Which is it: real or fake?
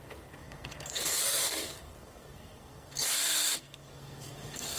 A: fake